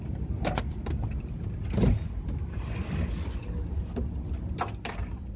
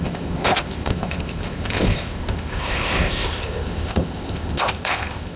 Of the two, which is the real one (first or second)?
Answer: first